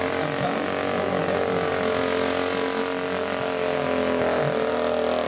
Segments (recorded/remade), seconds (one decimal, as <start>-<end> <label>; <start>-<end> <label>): 0.0-5.3 recorded